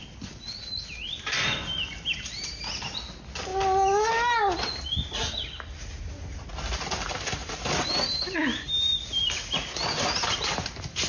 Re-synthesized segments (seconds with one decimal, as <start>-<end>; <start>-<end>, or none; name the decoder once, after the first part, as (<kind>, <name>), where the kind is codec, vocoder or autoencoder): none